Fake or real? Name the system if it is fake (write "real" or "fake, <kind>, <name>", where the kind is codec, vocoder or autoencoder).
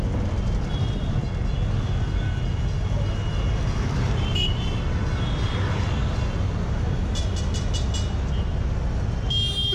real